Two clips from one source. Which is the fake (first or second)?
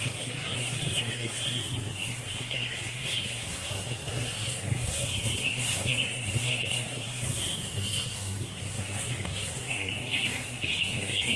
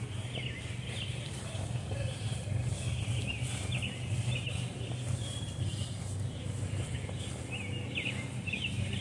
first